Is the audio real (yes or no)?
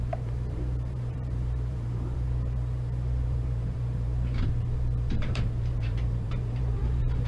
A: no